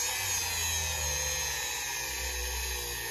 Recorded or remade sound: recorded